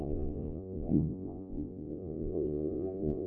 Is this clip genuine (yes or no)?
no